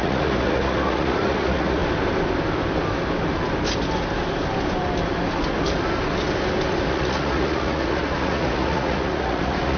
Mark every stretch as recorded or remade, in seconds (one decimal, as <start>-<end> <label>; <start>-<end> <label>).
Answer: 0.0-1.8 remade; 1.8-6.9 recorded; 6.9-9.8 remade